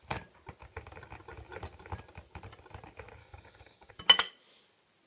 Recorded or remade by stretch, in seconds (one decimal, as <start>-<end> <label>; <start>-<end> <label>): 0.0-3.2 recorded; 3.2-3.9 remade; 3.9-5.1 recorded